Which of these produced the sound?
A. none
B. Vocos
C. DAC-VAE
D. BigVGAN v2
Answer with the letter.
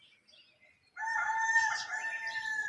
A